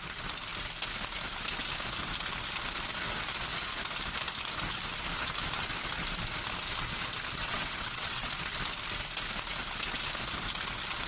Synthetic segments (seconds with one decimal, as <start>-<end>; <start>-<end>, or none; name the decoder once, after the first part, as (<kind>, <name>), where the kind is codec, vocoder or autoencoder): 7.4-8.3 (vocoder, WaveNeXt)